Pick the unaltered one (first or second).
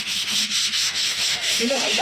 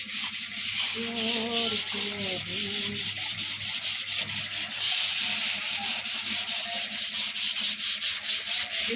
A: second